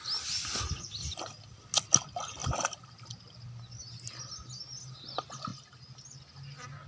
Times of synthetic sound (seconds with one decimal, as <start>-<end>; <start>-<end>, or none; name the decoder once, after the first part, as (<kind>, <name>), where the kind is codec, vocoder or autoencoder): 2.4-3.6 (vocoder, BigVGAN v2)